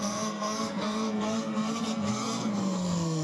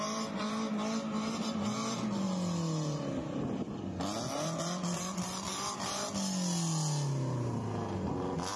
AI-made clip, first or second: first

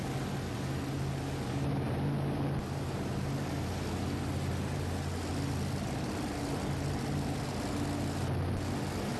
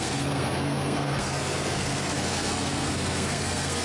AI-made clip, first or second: second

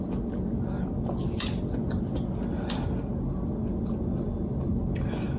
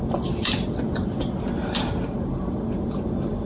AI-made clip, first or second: second